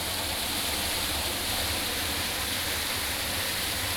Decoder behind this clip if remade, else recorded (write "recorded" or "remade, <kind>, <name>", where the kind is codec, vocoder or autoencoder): recorded